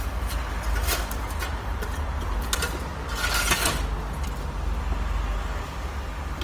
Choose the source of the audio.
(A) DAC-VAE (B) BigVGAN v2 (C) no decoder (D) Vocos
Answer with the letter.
C